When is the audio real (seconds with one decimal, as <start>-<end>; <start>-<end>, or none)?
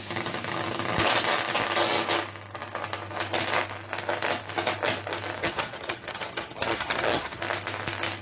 0.0-5.4; 7.4-8.2